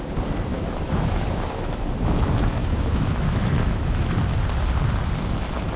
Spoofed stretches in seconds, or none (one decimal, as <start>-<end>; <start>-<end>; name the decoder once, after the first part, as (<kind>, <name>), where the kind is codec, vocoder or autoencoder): 0.5-1.8 (autoencoder, DAC-VAE); 2.6-4.1